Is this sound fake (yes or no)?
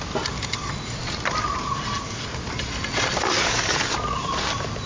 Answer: no